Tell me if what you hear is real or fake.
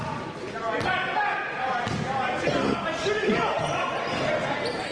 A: real